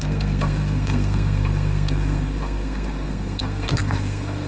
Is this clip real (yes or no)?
no